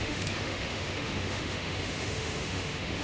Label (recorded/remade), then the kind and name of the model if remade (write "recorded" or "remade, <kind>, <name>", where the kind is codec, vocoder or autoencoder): remade, autoencoder, DAC-VAE